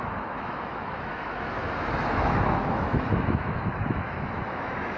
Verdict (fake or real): fake